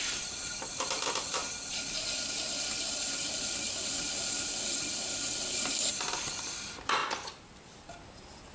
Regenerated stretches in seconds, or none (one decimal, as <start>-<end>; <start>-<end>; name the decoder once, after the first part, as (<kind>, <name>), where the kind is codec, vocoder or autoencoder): 7.0-7.9 (vocoder, BigVGAN v2)